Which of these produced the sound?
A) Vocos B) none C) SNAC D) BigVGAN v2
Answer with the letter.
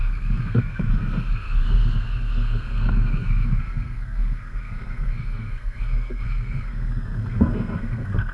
C